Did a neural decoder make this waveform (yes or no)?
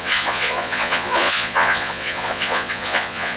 yes